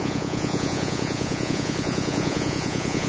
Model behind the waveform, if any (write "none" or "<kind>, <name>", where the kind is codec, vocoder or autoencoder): vocoder, Vocos